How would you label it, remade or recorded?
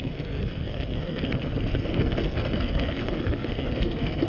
remade